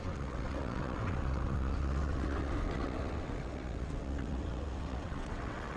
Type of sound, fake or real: fake